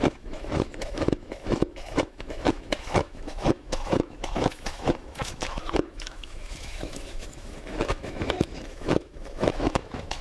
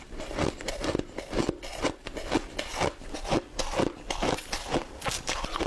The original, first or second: second